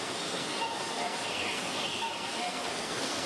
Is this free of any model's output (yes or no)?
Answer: no